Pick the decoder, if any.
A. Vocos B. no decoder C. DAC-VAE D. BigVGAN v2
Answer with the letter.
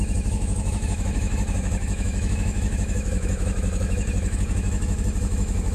C